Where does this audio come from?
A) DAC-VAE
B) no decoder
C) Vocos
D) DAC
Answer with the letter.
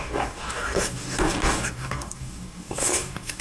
D